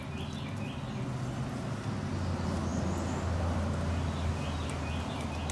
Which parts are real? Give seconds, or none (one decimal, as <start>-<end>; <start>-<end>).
0.0-5.5

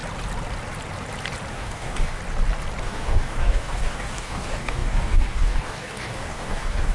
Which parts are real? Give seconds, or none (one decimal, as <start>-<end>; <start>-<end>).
0.0-1.5; 2.2-2.8